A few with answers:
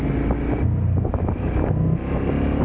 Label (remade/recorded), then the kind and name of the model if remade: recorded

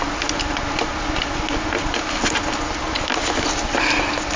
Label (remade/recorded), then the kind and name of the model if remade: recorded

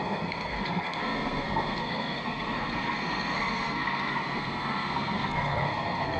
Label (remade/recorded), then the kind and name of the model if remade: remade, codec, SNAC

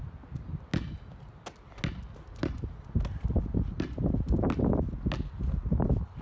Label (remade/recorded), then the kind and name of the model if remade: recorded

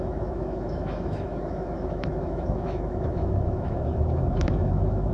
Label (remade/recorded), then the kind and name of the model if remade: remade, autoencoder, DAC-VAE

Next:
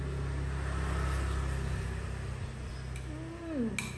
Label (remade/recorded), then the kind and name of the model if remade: recorded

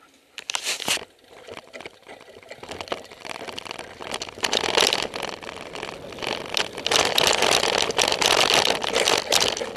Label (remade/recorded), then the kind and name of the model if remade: recorded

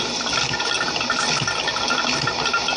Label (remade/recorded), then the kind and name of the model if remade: recorded